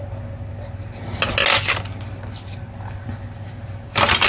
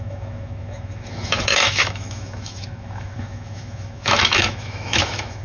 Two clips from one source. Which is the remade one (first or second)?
second